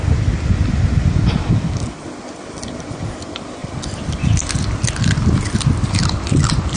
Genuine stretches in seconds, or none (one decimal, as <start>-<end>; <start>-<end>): 0.0-3.6; 4.9-6.8

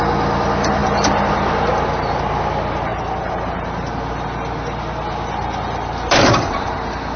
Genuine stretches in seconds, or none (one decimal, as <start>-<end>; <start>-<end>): 0.0-7.2

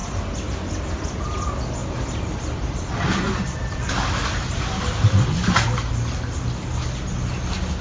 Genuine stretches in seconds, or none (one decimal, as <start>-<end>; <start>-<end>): 0.0-1.8; 5.8-7.8

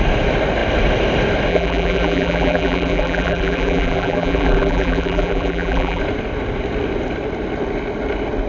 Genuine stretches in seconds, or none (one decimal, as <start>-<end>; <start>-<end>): 0.0-1.5; 6.0-8.5

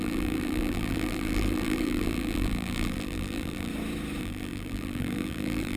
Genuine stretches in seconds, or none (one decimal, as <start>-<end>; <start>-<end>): 3.7-4.2